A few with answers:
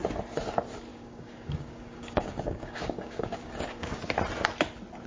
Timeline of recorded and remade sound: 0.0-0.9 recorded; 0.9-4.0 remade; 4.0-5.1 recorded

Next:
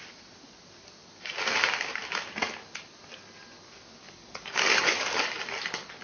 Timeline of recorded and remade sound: 0.0-4.0 recorded; 4.0-5.4 remade; 5.4-6.0 recorded

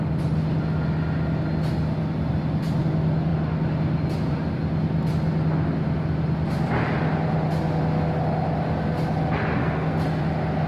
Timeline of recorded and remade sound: 0.0-9.6 recorded; 9.6-10.2 remade; 10.2-10.7 recorded

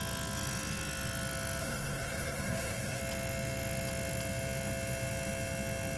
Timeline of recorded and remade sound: 0.0-1.6 recorded; 1.6-3.0 remade; 3.0-6.0 recorded

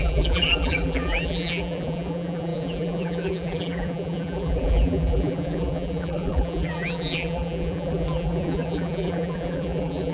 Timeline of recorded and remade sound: 0.0-10.1 remade

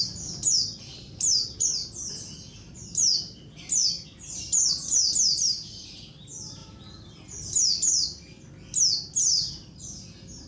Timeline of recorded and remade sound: 0.0-10.5 recorded

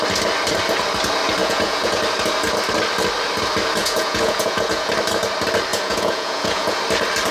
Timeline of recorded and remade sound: 0.0-1.4 recorded; 1.4-2.0 remade; 2.0-3.8 recorded; 3.8-4.9 remade; 4.9-5.7 recorded; 5.7-6.8 remade; 6.8-7.3 recorded